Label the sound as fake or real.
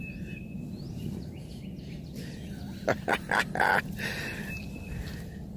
real